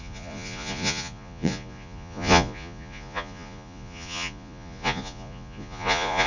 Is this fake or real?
fake